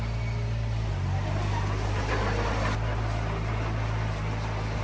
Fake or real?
real